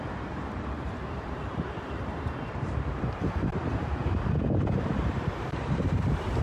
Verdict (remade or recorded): remade